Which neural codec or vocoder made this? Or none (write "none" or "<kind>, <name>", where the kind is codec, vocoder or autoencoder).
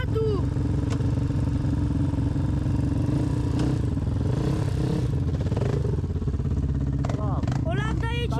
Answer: none